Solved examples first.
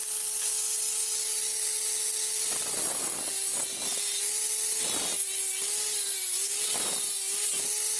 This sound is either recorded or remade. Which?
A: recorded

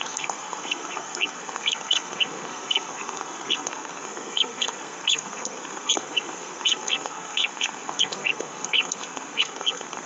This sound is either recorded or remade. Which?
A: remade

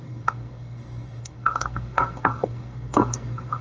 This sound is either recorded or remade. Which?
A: remade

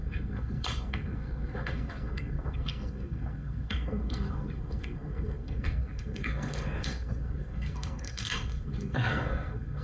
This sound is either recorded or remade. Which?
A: remade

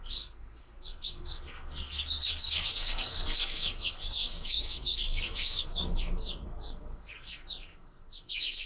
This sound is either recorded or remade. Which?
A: remade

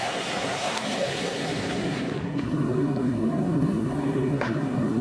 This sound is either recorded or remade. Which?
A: remade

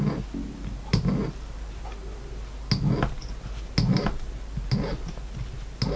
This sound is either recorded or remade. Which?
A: recorded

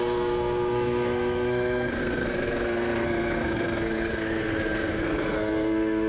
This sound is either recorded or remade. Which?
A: remade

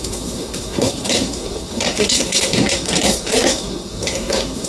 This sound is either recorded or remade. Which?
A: remade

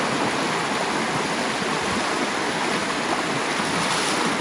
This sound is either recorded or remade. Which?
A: recorded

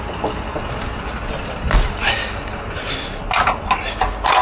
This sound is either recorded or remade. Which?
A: recorded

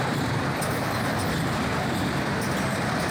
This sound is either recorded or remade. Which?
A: recorded